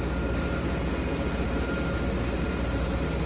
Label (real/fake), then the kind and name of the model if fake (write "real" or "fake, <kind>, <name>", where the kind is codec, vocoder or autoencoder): real